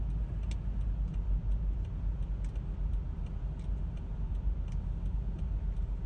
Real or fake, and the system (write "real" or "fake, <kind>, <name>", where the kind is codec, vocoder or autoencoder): real